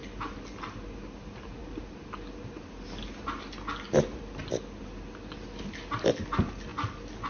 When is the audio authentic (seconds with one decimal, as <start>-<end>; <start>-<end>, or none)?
0.0-7.3